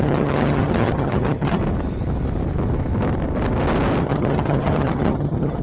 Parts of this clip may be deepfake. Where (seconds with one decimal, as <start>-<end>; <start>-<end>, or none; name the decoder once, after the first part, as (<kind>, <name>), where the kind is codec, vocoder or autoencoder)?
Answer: 0.0-1.6 (vocoder, HiFi-GAN); 4.0-5.6

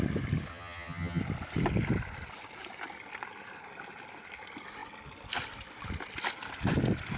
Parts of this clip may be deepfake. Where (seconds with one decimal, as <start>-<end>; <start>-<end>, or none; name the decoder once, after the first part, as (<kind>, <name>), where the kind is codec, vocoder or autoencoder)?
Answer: 0.5-1.2 (vocoder, HiFi-GAN)

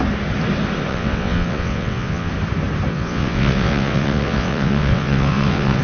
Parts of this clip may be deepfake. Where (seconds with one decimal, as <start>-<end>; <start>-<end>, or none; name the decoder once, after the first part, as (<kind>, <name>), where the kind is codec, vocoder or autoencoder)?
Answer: 0.9-2.3 (vocoder, WaveNeXt); 2.9-5.8

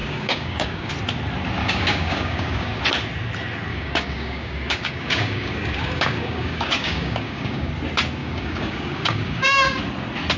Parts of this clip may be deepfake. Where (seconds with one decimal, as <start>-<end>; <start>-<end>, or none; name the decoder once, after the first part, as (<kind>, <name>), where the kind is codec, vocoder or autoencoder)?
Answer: 0.0-0.9 (codec, DAC); 1.6-2.8; 3.7-7.7; 8.2-9.8

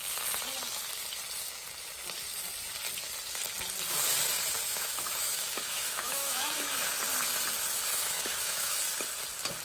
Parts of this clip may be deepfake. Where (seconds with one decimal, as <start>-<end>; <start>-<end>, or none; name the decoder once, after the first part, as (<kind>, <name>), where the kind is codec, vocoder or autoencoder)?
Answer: 4.7-6.7 (autoencoder, DAC-VAE); 8.0-8.8

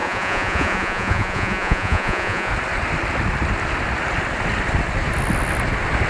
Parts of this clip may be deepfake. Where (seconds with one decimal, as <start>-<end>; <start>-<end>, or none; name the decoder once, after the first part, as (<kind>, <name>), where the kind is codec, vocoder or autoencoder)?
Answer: 0.0-2.5 (vocoder, Vocos)

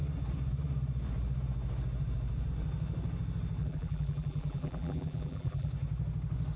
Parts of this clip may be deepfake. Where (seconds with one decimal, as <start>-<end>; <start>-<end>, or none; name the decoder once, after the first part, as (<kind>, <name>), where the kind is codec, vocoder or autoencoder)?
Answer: 3.6-5.7 (vocoder, BigVGAN v2)

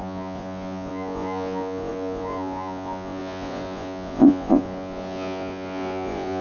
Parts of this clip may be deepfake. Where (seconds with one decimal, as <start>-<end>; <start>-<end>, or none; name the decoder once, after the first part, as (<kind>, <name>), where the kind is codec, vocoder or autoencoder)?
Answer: 0.0-6.4 (vocoder, Vocos)